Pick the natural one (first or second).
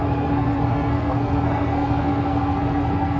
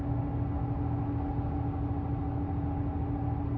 second